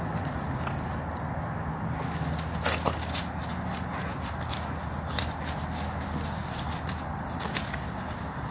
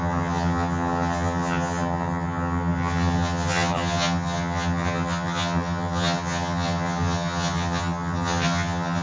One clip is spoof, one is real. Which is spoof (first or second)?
second